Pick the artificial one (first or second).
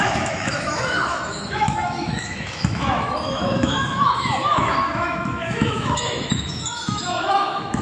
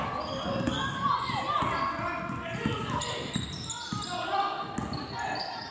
first